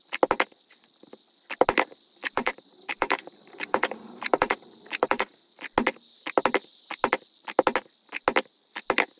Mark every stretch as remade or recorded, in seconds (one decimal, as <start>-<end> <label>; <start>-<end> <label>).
0.0-2.2 recorded; 2.2-5.6 remade; 5.6-9.2 recorded